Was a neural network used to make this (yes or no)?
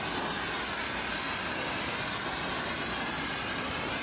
no